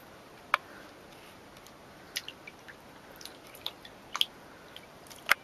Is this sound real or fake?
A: real